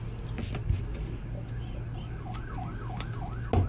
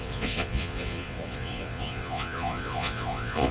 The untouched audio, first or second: first